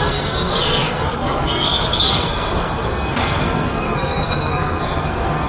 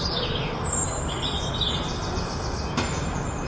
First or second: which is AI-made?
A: first